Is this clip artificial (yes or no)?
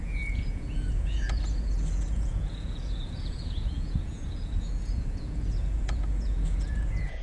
yes